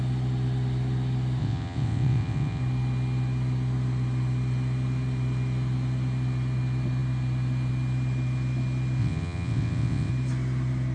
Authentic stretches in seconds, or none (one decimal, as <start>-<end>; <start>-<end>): 0.0-1.4; 2.6-9.0; 10.1-10.9